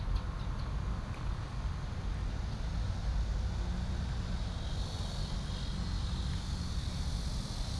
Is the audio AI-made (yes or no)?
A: no